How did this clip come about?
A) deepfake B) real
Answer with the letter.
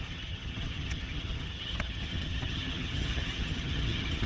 A